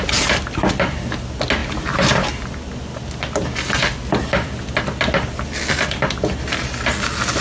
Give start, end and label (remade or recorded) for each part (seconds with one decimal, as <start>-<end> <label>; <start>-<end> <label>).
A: 0.0-7.4 recorded